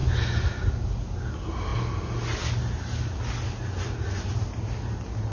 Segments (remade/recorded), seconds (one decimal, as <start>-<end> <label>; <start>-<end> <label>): 0.0-5.3 recorded